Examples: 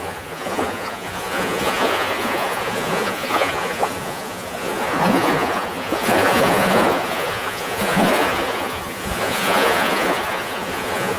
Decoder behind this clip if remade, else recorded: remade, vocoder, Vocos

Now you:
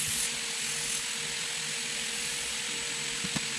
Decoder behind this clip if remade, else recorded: recorded